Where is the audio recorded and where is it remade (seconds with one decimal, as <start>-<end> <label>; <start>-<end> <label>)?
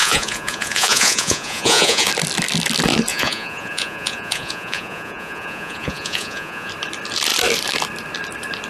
0.0-2.1 remade; 2.1-3.1 recorded; 3.1-6.7 remade; 6.7-8.7 recorded